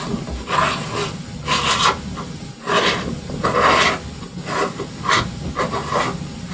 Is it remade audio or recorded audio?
recorded